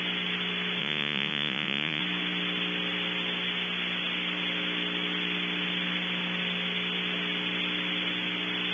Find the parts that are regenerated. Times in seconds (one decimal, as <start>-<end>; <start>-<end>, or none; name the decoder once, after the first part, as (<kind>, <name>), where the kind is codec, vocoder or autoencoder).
0.8-2.0 (vocoder, Vocos)